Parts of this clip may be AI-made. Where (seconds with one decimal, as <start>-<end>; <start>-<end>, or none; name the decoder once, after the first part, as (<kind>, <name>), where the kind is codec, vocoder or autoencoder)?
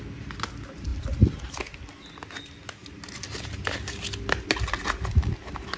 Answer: none